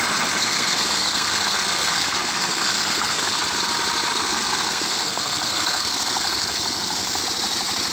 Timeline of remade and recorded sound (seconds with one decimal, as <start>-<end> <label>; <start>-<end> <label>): 0.0-0.4 recorded; 0.4-3.4 remade; 3.4-4.1 recorded; 4.1-7.2 remade; 7.2-7.9 recorded